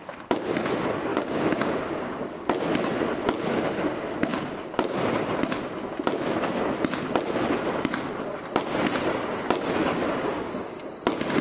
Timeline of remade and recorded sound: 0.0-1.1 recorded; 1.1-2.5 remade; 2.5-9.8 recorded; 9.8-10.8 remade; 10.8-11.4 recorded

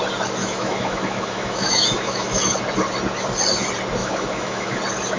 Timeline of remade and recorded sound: 0.0-0.4 recorded; 0.4-2.5 remade; 2.5-4.0 recorded; 4.0-4.8 remade; 4.8-5.2 recorded

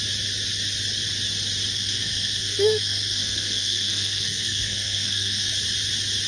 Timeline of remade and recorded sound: 0.0-1.7 recorded; 1.7-5.5 remade; 5.5-6.3 recorded

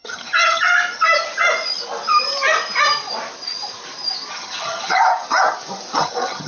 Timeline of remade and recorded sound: 0.0-0.7 remade; 0.7-4.3 recorded; 4.3-5.0 remade; 5.0-6.0 recorded; 6.0-6.5 remade